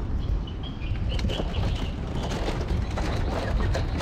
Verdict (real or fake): real